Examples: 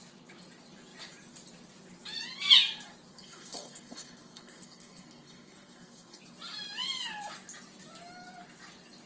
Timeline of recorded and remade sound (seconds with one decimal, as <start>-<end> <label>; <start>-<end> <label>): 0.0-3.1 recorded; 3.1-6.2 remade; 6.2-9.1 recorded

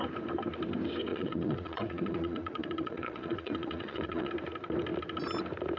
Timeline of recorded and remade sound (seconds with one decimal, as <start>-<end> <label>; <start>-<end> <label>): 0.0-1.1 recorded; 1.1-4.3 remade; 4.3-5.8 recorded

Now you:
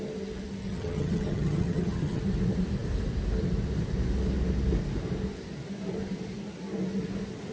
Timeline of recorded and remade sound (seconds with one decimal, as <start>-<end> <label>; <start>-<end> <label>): 0.0-0.6 recorded; 0.6-2.2 remade; 2.2-7.5 recorded